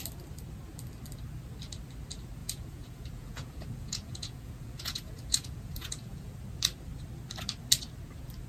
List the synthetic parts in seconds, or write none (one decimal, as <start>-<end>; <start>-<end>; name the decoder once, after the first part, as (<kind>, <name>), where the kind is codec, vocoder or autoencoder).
2.4-6.3 (vocoder, Vocos)